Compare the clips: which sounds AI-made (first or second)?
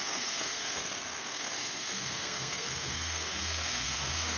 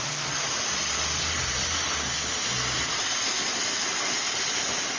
first